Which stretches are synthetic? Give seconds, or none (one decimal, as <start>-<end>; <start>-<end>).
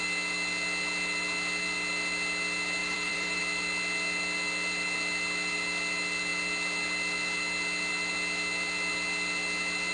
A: 2.8-3.4